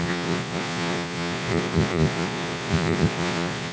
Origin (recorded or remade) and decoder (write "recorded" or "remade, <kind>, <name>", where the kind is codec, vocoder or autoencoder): remade, vocoder, Vocos